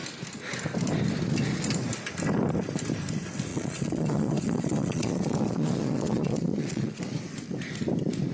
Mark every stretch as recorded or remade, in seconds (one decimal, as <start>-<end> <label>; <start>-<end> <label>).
0.0-3.5 recorded; 3.5-7.0 remade; 7.0-8.3 recorded

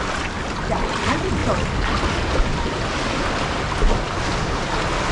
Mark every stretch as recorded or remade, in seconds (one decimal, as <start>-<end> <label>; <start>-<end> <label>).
0.0-5.1 recorded

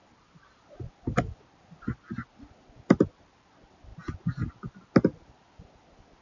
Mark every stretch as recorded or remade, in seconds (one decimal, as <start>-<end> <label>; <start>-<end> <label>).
0.0-6.2 recorded

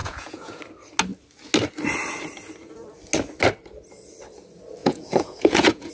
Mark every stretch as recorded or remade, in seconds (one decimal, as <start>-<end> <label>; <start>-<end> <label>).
0.0-0.6 remade; 0.6-4.8 recorded; 4.8-5.9 remade

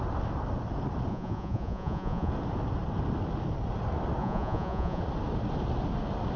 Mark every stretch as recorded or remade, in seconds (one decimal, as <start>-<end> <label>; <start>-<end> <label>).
0.0-1.1 recorded; 1.1-2.3 remade; 2.3-4.2 recorded; 4.2-5.0 remade; 5.0-6.4 recorded